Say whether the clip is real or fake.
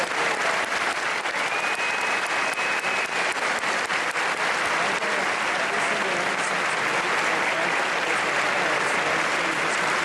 real